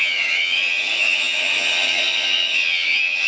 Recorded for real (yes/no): no